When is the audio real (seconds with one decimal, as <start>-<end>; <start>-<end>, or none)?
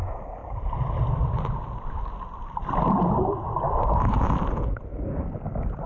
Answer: 0.0-0.4; 2.4-4.9